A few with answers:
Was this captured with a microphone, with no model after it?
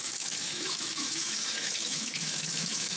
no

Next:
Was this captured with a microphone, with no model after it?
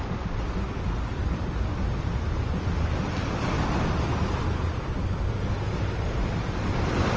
yes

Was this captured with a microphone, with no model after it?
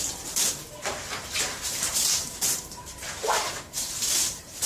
no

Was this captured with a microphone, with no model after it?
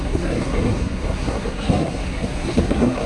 no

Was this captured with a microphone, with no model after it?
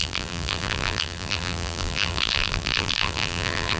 no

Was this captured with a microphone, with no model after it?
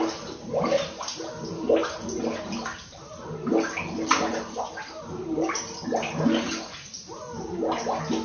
yes